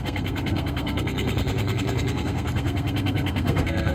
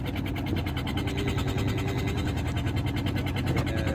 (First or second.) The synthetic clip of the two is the first